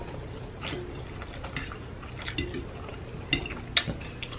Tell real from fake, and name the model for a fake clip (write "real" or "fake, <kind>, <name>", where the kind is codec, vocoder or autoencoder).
real